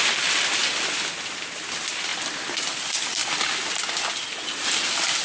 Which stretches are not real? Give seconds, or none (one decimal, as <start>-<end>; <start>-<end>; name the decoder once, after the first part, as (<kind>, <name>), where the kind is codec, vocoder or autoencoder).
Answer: none